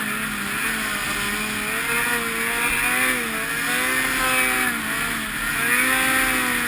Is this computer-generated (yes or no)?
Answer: no